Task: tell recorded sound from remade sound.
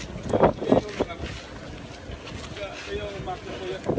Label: recorded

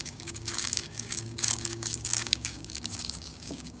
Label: remade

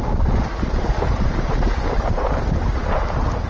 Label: recorded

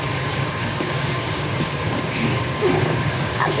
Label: remade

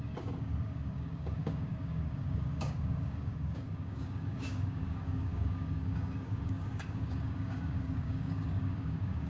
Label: remade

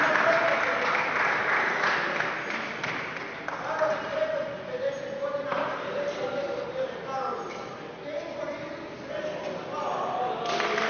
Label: recorded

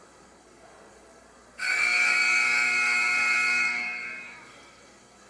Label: remade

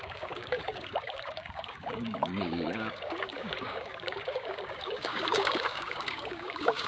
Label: remade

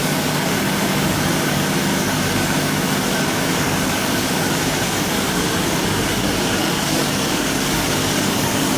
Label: remade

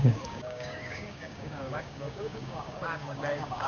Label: remade